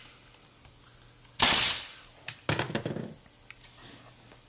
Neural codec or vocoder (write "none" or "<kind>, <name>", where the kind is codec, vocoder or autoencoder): none